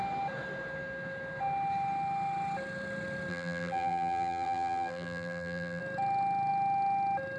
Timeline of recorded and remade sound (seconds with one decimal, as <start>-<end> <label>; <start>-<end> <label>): 0.0-3.3 recorded; 3.3-5.8 remade; 5.8-7.4 recorded